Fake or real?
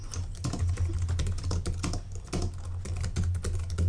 real